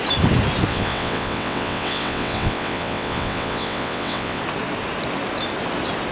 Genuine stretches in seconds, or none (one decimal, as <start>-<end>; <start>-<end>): 0.0-0.7; 4.4-6.1